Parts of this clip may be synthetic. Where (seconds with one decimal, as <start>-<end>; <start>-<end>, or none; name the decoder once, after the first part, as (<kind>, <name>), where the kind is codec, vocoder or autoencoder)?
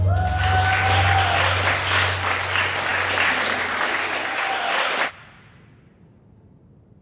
none